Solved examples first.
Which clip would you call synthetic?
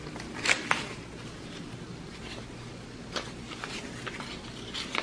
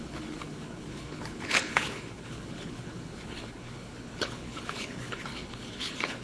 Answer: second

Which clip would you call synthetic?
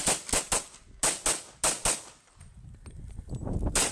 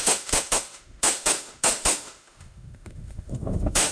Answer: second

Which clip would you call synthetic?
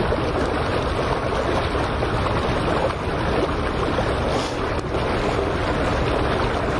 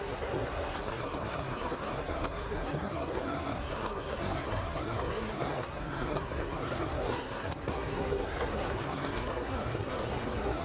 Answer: second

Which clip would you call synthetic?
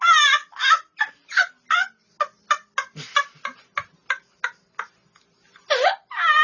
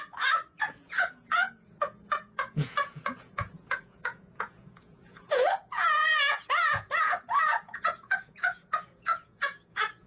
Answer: second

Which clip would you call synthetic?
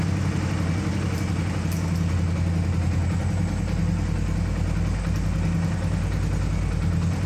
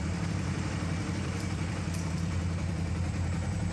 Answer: second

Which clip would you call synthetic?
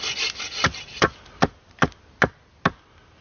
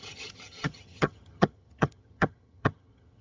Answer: second